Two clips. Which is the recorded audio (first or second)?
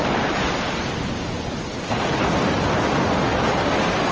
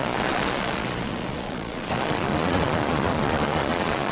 first